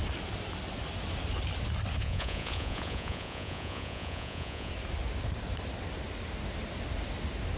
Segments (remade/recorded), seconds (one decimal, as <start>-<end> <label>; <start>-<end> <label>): 0.0-2.0 recorded; 2.0-4.7 remade; 4.7-7.6 recorded